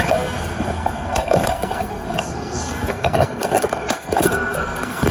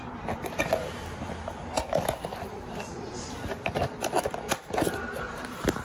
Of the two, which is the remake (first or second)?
first